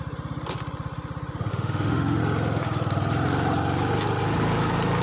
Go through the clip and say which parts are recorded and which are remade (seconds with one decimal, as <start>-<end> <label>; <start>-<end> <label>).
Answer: 0.0-1.5 recorded; 1.5-2.2 remade; 2.2-5.0 recorded